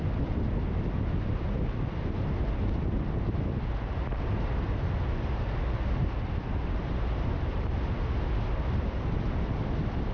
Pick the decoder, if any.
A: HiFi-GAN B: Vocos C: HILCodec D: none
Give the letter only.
D